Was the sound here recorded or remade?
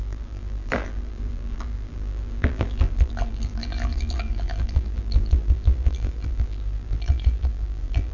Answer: remade